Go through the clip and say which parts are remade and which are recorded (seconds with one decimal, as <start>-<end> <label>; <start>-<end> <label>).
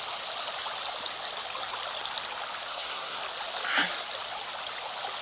0.0-2.7 recorded; 2.7-3.2 remade; 3.2-5.2 recorded